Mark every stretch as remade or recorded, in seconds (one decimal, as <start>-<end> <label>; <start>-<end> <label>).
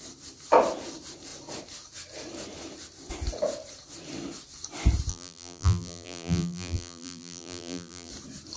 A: 0.0-5.1 recorded; 5.1-8.1 remade; 8.1-8.6 recorded